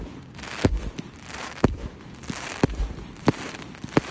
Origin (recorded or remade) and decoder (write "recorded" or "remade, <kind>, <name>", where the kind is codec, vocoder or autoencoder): remade, vocoder, BigVGAN v2